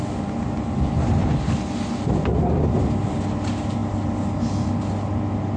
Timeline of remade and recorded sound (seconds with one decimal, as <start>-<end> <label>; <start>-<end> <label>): 0.0-5.6 recorded